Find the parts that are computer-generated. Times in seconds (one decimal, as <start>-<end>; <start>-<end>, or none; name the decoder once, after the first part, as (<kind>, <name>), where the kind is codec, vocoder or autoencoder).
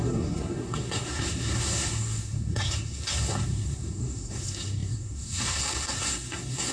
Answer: 0.0-6.7 (codec, SNAC)